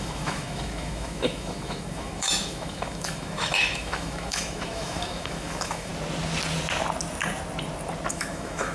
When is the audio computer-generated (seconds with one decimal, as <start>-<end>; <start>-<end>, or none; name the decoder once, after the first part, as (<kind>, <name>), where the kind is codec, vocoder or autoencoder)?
0.0-5.9 (autoencoder, DAC-VAE); 8.1-8.7